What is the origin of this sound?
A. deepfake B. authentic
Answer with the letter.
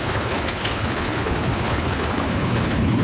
A